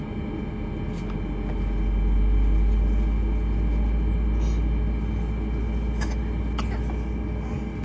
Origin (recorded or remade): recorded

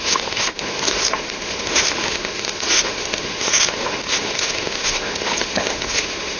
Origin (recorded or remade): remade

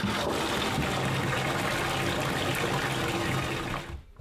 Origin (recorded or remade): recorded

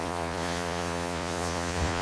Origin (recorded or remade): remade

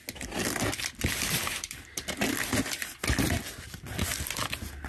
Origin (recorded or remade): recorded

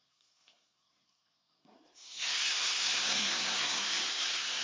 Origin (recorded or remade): remade